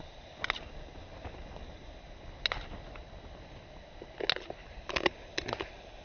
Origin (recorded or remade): recorded